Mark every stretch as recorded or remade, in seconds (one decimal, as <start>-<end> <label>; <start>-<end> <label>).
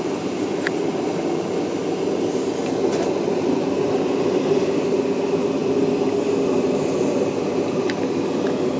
0.0-8.8 recorded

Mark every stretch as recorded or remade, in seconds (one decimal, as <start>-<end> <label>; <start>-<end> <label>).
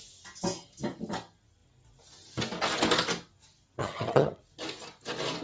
0.0-3.8 recorded; 3.8-4.4 remade; 4.4-5.4 recorded